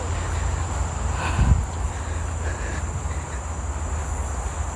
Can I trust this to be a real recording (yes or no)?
yes